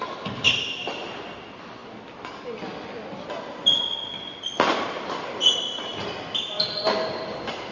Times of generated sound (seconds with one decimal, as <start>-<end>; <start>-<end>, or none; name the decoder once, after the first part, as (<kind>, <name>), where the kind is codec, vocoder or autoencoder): none